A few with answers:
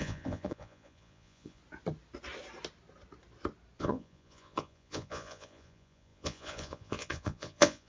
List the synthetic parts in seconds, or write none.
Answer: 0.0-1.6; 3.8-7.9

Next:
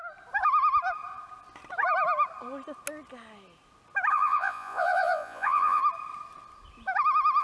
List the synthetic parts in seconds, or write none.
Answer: 4.1-5.8

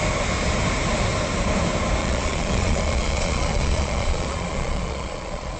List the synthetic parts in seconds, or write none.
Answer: 2.0-5.6

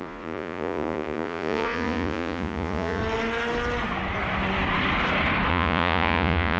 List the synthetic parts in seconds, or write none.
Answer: 0.0-3.0; 5.5-6.6

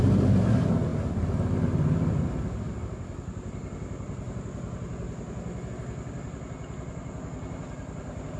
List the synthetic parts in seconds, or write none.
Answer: none

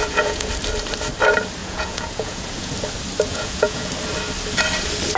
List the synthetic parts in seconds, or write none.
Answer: 0.0-0.5; 1.6-2.7; 3.3-3.9